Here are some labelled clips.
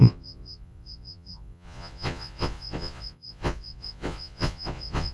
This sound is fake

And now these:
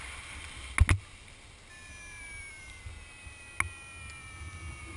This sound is real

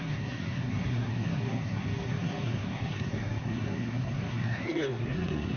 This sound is fake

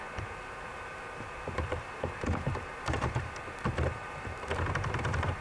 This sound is fake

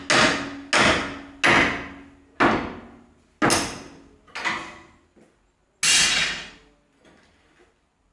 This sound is real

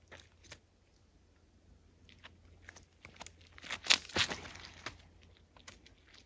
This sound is real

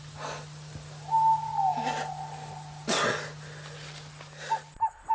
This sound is real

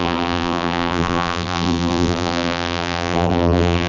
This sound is fake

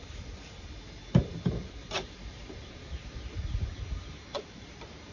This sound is fake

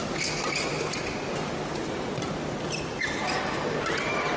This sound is real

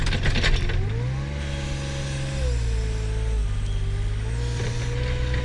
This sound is real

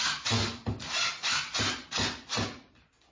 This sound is real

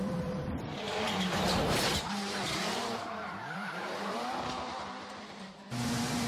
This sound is fake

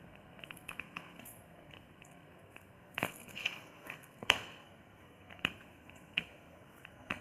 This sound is fake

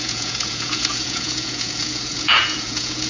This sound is fake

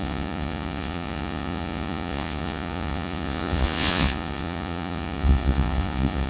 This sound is fake